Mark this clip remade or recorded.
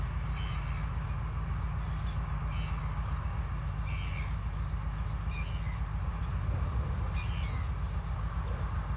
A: recorded